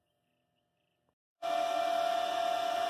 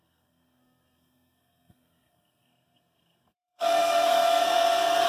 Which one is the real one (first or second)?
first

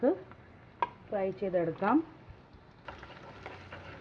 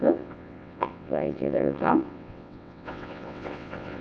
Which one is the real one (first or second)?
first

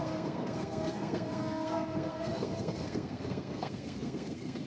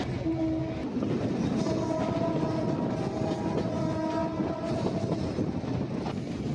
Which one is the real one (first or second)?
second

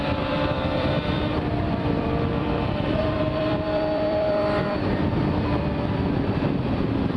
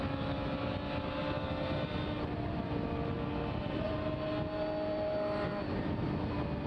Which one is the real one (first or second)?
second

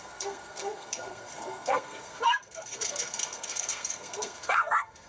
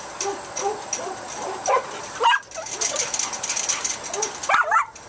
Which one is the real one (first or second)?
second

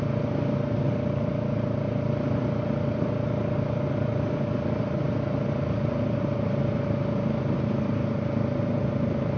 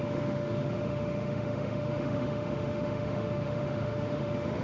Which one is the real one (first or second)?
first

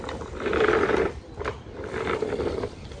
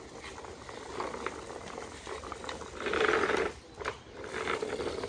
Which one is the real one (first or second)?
second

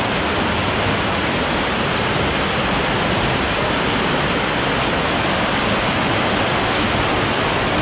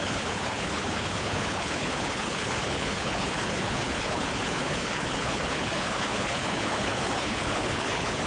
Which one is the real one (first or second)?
first